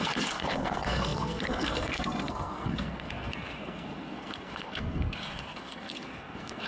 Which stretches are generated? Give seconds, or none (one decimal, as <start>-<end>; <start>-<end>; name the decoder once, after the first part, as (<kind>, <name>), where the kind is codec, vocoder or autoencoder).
0.0-6.7 (codec, SNAC)